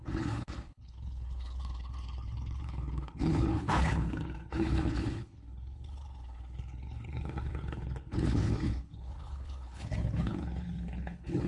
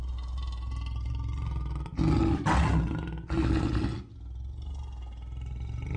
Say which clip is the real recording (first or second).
second